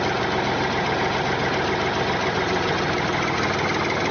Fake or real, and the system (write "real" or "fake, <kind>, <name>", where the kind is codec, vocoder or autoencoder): real